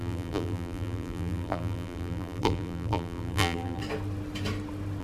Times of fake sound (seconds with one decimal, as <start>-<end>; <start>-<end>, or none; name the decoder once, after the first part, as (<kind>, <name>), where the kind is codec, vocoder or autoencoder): 0.0-3.8 (vocoder, BigVGAN v2)